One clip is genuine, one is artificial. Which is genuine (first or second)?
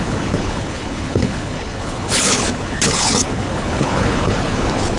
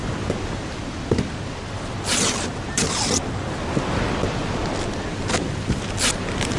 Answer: second